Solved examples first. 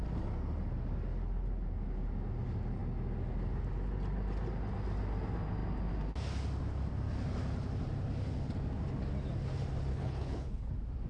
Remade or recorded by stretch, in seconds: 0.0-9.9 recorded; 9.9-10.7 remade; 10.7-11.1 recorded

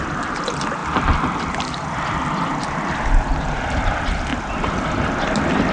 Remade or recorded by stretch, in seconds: 0.0-0.8 recorded; 0.8-3.1 remade; 3.1-4.3 recorded; 4.3-4.8 remade; 4.8-5.7 recorded

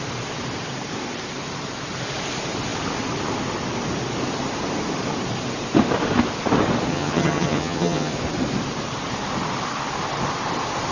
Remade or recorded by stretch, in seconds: 0.0-6.9 recorded; 6.9-8.1 remade; 8.1-10.9 recorded

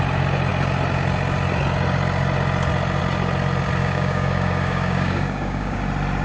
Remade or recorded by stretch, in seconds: 0.0-3.8 recorded; 3.8-5.8 remade; 5.8-6.2 recorded

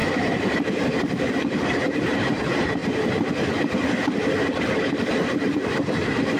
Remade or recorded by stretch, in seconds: 0.0-2.8 remade; 2.8-4.2 recorded; 4.2-6.4 remade

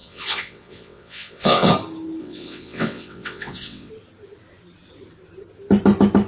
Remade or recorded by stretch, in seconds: 0.0-1.7 remade; 1.7-2.2 recorded; 2.2-3.9 remade; 3.9-6.3 recorded

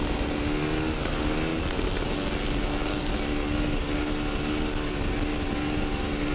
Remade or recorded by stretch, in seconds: 0.0-6.3 recorded

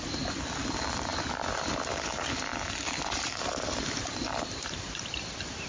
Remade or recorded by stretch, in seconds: 0.0-5.7 recorded